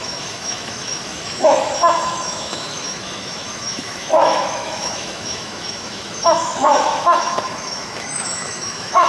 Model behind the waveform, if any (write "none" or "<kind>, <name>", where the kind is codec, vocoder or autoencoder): autoencoder, DAC-VAE